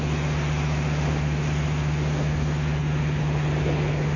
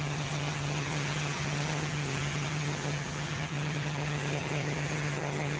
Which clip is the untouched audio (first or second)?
first